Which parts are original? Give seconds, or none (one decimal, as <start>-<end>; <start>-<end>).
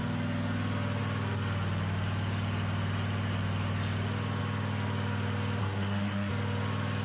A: 0.0-5.6; 6.3-7.0